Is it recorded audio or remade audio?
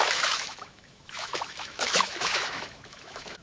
remade